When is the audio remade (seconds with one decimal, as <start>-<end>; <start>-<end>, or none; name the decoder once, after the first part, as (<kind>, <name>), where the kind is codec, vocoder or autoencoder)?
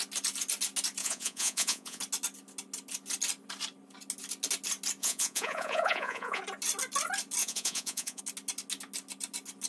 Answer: 1.0-2.0 (vocoder, Vocos); 5.0-6.4; 7.4-8.2